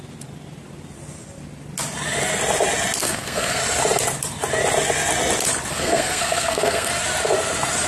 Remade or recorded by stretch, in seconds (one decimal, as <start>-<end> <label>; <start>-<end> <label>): 0.0-3.0 recorded; 3.0-3.6 remade; 3.6-5.7 recorded; 5.7-6.9 remade; 6.9-7.9 recorded

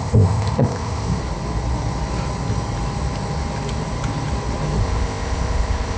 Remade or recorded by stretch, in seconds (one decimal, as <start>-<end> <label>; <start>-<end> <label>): 0.0-1.2 remade; 1.2-4.8 recorded; 4.8-6.0 remade

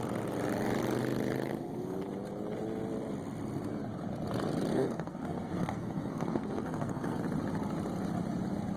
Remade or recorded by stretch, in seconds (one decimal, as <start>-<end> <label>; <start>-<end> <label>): 0.0-4.7 recorded; 4.7-7.2 remade; 7.2-8.8 recorded

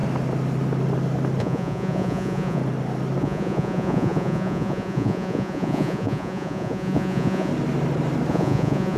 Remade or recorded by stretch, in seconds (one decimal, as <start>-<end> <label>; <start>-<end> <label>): 0.0-1.4 recorded; 1.4-2.6 remade; 2.6-3.2 recorded; 3.2-7.5 remade; 7.5-8.3 recorded; 8.3-9.0 remade

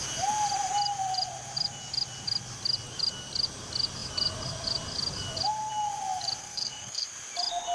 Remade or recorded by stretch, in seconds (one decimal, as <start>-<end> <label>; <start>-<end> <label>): 0.0-6.4 recorded; 6.4-7.1 remade; 7.1-7.7 recorded

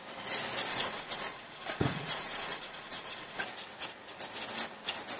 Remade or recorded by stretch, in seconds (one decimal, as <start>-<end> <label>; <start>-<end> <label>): 0.0-0.7 recorded; 0.7-3.4 remade; 3.4-5.2 recorded